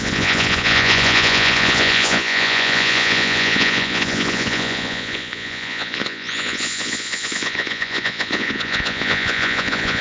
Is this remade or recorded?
remade